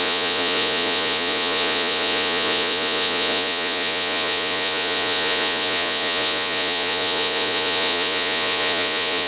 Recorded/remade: remade